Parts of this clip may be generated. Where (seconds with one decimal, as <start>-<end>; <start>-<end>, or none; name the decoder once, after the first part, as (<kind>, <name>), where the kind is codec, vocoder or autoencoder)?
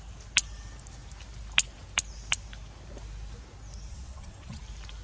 3.9-4.6 (vocoder, WaveNeXt)